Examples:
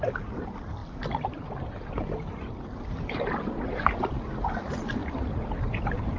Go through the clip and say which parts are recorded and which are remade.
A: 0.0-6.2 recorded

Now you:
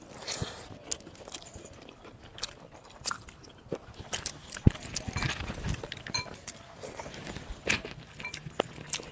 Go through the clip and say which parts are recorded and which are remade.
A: 0.0-9.1 recorded